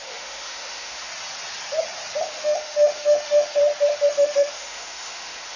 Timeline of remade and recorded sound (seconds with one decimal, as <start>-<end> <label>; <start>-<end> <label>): 0.0-1.1 remade; 1.1-2.2 recorded; 2.2-3.6 remade; 3.6-4.1 recorded; 4.1-5.6 remade